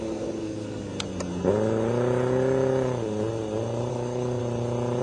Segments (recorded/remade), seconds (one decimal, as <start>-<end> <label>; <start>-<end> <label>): 0.0-0.9 remade; 0.9-3.9 recorded; 3.9-4.4 remade; 4.4-5.0 recorded